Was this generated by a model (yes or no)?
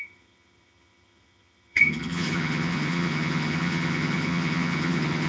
yes